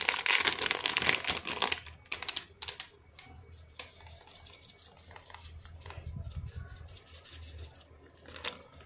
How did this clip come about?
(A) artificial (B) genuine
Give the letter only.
B